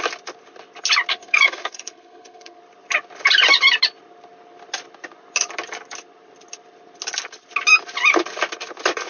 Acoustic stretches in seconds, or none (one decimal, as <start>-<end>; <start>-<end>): 0.0-1.1; 2.6-9.1